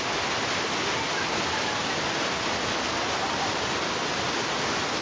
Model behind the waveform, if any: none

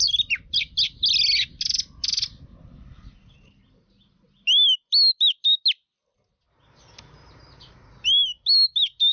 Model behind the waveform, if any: none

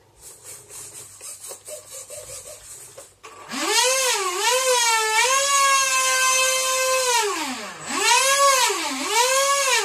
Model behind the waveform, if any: none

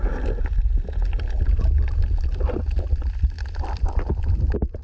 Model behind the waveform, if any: none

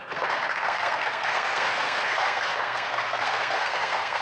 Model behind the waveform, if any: codec, SNAC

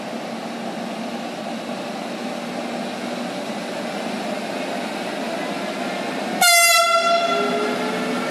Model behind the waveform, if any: none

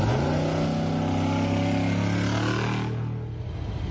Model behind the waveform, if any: none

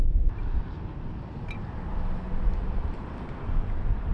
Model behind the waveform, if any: none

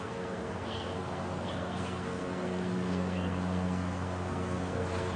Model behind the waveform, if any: codec, SNAC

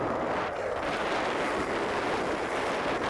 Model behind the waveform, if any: none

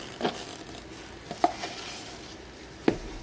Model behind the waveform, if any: none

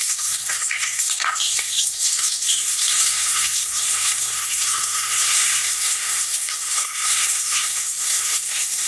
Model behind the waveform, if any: codec, SNAC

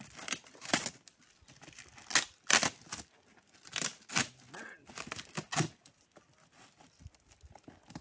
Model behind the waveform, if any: none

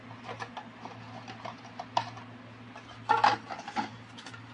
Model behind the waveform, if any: none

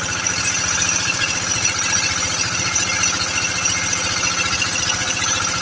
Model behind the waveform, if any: none